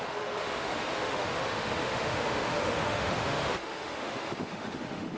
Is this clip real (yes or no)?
no